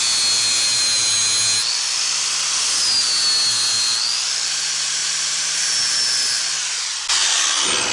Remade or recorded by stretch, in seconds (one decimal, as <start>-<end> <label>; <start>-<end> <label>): 0.0-5.0 recorded; 5.0-5.6 remade; 5.6-7.9 recorded